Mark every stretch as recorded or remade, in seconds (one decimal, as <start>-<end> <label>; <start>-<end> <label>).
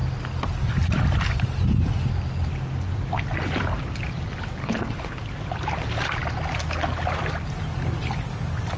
0.0-4.6 recorded; 4.6-5.2 remade; 5.2-8.8 recorded